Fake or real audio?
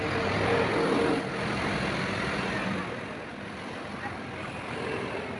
real